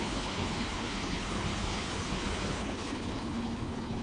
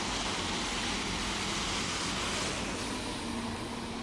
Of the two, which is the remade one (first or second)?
first